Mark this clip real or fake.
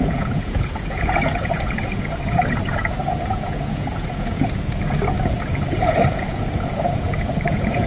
fake